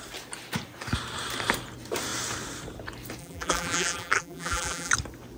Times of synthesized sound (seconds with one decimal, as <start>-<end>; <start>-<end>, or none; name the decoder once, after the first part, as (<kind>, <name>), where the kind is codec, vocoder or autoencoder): 3.2-4.9 (vocoder, BigVGAN v2)